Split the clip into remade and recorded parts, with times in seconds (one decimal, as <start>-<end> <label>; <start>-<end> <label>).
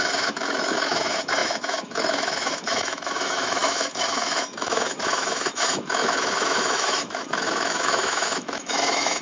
0.0-9.2 remade